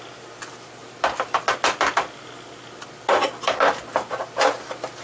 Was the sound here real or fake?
real